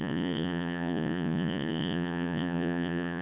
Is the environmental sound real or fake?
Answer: fake